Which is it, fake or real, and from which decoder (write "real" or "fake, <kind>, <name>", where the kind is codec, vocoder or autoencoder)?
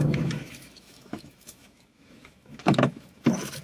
fake, autoencoder, DAC-VAE